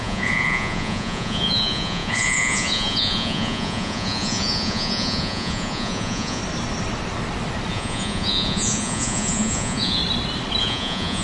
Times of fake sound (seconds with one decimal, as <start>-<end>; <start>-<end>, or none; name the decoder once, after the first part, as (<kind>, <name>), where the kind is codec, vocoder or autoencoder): 0.0-6.4 (vocoder, Vocos); 7.7-10.0; 10.6-11.2